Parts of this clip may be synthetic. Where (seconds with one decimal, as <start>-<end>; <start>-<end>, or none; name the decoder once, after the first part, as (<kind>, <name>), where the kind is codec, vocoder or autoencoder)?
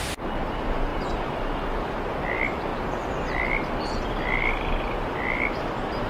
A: none